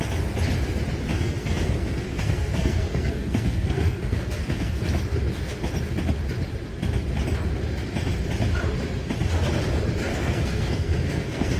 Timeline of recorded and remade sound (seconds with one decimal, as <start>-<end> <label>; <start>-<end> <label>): 0.0-1.1 recorded; 1.1-4.9 remade; 4.9-10.1 recorded; 10.1-11.6 remade